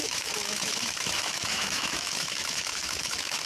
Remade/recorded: remade